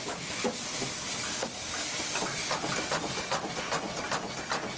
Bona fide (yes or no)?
yes